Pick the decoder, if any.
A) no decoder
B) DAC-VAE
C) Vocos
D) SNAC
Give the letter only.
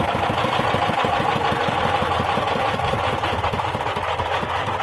A